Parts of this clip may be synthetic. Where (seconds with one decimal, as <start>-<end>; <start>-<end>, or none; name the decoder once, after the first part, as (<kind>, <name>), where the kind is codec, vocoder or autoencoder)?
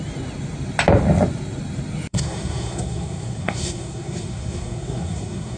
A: 2.1-5.6 (codec, SNAC)